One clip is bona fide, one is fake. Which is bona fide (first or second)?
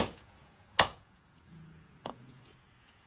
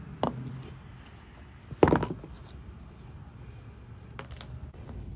second